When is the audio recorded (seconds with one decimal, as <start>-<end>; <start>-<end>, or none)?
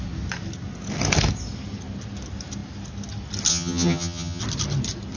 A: 0.0-3.5; 4.4-5.2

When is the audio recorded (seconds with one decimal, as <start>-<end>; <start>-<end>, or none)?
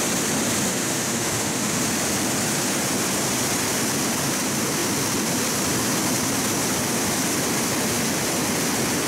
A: 0.0-0.7; 1.8-9.1